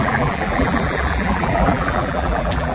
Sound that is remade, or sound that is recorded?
remade